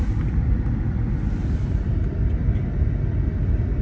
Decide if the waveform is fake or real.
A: real